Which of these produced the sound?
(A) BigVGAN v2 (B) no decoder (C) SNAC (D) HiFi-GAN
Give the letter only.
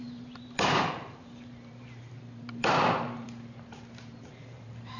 A